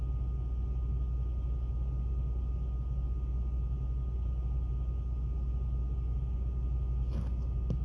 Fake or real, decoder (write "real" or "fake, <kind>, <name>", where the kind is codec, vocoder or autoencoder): real